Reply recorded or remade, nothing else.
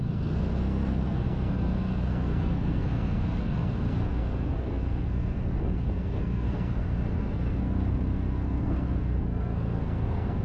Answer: remade